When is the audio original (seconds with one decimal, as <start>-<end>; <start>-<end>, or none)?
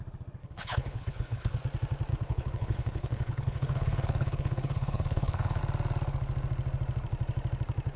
0.0-0.4; 1.5-2.1; 5.6-8.0